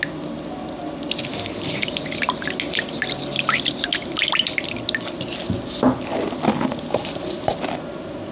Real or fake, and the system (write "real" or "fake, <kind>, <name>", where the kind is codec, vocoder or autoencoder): real